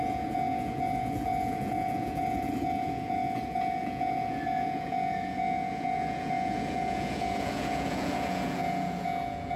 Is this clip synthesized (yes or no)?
yes